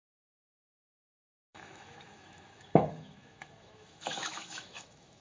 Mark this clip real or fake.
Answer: fake